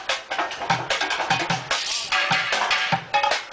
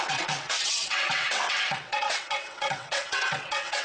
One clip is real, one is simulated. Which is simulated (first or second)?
second